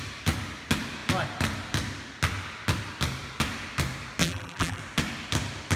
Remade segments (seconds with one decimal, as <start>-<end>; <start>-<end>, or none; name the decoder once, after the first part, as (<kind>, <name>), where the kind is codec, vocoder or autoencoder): 4.2-4.8 (vocoder, BigVGAN v2)